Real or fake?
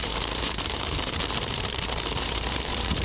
fake